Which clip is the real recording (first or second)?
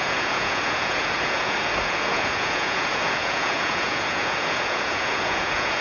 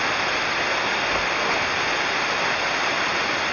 second